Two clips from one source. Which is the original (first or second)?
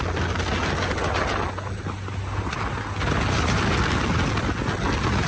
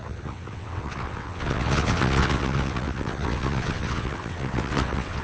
first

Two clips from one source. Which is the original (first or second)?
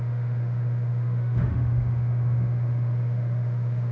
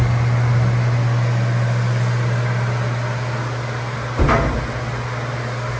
second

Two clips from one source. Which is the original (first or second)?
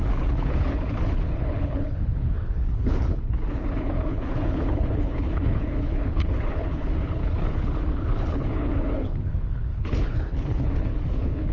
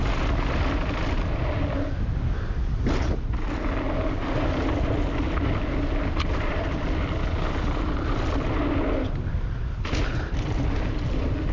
second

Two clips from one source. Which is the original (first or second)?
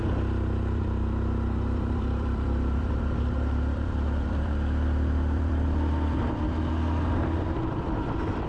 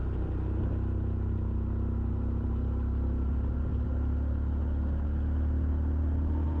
second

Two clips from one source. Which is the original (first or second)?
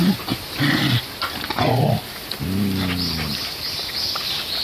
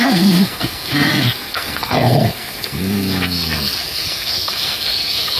first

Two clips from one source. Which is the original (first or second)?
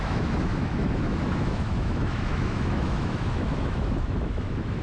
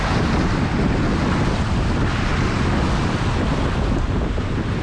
second